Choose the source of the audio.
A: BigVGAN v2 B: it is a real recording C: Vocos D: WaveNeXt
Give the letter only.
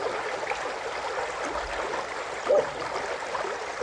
B